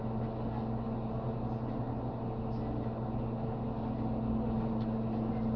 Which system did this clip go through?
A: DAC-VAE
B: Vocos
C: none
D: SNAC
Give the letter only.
C